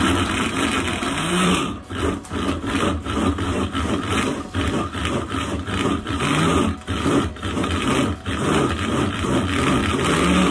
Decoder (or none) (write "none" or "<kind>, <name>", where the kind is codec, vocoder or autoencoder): vocoder, BigVGAN v2